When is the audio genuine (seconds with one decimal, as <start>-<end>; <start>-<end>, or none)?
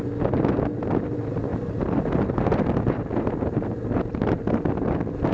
0.0-5.3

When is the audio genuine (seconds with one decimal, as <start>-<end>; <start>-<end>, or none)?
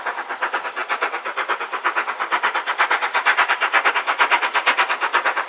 0.0-5.5